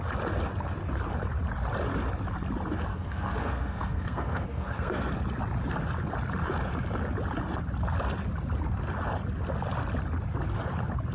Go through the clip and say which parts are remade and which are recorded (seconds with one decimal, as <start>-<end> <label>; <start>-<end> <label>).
0.0-2.9 recorded; 2.9-5.1 remade; 5.1-11.1 recorded